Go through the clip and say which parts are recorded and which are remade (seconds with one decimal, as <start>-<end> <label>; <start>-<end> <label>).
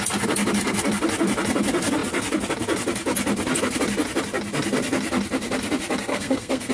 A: 0.0-6.1 recorded; 6.1-6.7 remade